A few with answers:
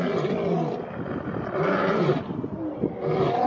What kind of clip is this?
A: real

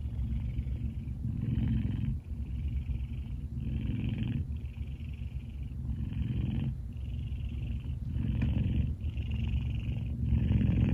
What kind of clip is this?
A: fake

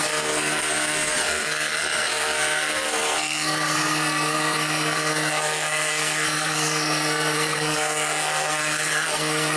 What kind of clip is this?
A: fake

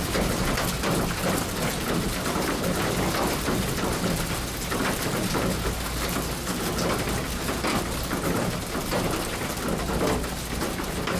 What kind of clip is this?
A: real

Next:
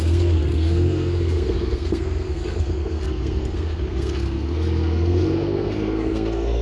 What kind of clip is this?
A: fake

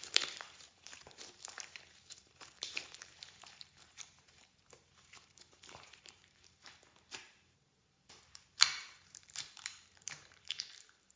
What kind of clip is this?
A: fake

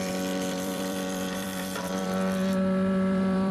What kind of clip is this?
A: fake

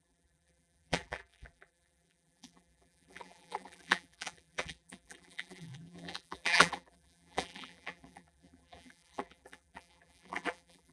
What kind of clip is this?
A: fake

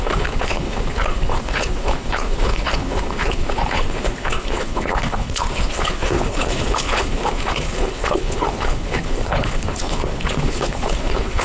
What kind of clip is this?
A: fake